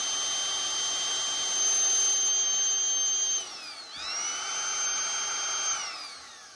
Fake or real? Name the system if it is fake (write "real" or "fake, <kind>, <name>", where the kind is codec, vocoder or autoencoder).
real